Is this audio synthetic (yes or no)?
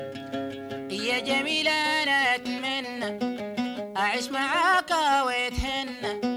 no